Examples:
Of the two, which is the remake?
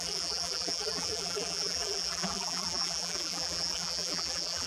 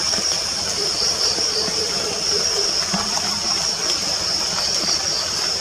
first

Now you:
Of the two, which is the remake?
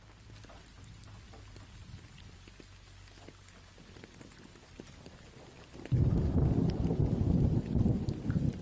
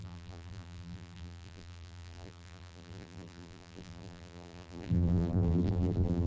second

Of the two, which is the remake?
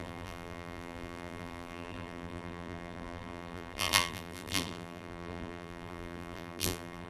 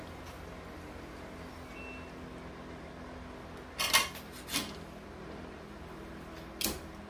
first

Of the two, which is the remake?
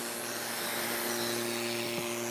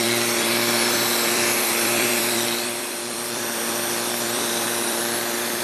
second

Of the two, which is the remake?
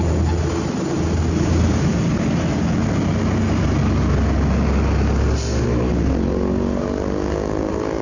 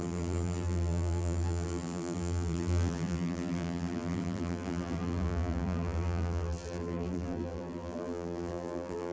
second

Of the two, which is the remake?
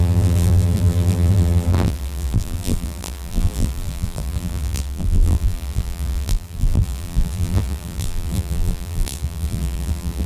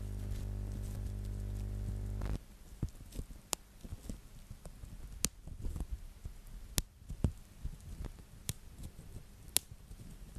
first